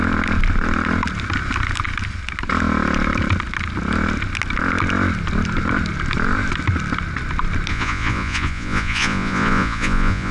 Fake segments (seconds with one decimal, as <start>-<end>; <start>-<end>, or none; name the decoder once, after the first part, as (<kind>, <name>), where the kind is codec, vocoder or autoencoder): 7.7-10.3 (vocoder, Vocos)